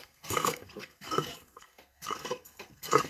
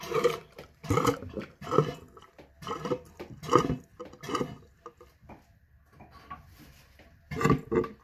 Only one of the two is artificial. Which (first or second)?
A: first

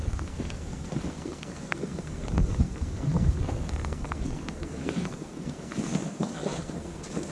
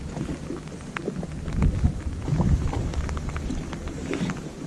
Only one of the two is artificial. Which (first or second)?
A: first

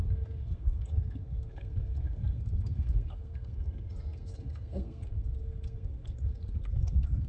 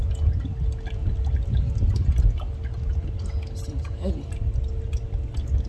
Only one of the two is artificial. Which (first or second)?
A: first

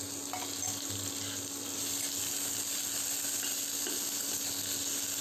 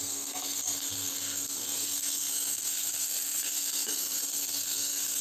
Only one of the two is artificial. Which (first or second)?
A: second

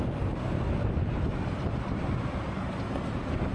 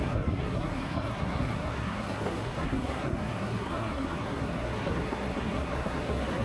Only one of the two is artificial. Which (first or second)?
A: second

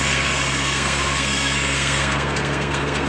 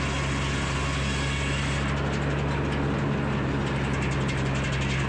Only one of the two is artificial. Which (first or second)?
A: first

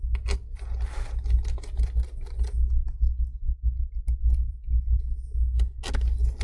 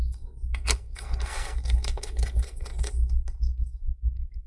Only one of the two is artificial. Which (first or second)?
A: second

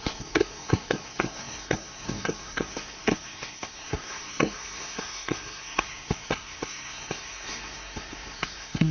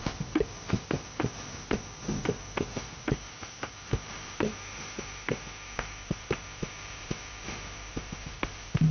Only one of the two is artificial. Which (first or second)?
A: first